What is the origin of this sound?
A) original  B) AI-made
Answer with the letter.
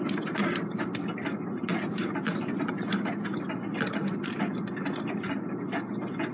A